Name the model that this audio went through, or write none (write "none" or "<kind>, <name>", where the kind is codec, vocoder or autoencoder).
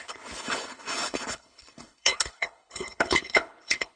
codec, HILCodec